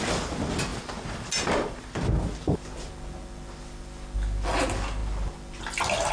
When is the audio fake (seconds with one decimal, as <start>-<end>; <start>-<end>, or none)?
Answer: none